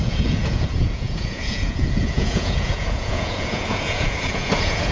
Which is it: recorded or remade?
remade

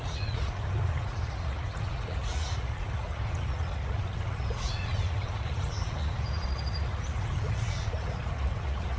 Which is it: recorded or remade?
remade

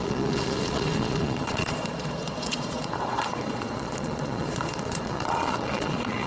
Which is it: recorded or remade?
remade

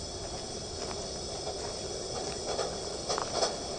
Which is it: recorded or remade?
recorded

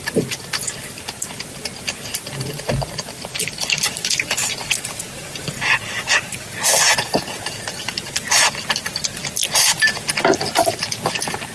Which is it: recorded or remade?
recorded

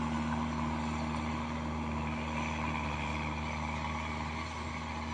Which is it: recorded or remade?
recorded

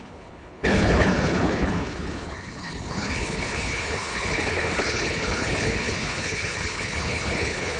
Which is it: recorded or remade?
remade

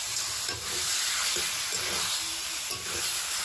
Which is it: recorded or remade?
recorded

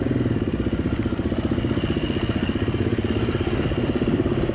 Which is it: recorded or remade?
recorded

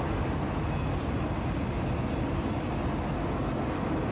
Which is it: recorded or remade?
recorded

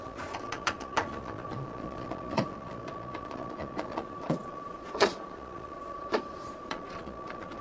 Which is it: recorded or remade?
remade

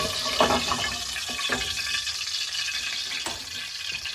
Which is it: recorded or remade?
recorded